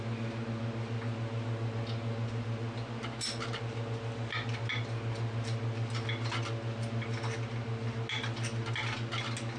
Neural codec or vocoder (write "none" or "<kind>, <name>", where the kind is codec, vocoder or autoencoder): none